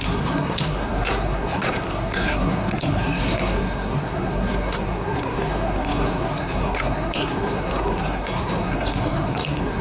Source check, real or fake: fake